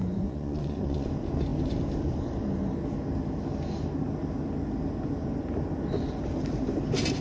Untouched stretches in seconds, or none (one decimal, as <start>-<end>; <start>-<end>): 1.1-7.2

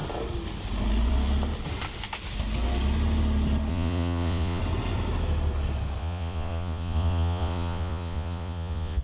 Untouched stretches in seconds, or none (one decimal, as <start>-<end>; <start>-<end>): 0.0-3.7; 4.6-6.0

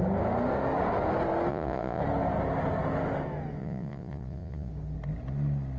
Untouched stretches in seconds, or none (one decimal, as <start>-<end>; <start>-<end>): 0.0-1.5; 2.0-3.6; 4.7-5.8

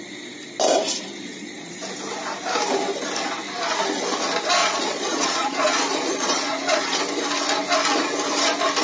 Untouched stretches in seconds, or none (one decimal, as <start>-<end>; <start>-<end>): 0.0-1.2; 1.8-4.6; 7.0-8.8

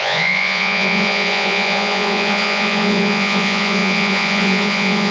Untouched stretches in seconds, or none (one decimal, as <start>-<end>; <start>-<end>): none

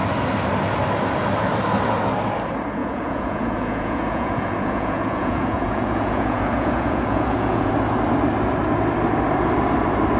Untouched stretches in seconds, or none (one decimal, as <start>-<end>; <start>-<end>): 0.0-2.8; 7.7-10.2

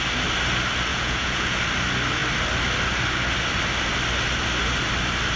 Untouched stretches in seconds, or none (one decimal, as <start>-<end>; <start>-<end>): 0.0-0.9; 1.6-5.4

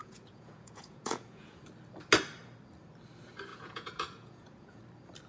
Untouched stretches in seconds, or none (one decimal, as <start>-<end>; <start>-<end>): 1.6-3.5; 4.8-5.3